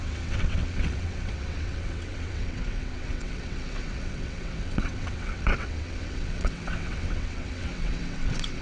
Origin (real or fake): fake